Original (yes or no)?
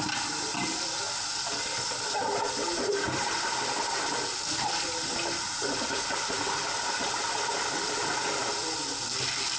yes